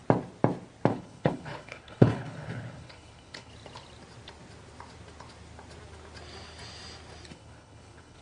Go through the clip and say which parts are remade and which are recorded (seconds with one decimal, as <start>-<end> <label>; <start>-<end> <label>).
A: 0.0-0.9 recorded; 0.9-3.5 remade; 3.5-7.3 recorded; 7.3-8.2 remade